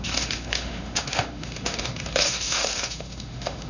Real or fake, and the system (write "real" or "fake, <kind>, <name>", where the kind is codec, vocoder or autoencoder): fake, autoencoder, DAC-VAE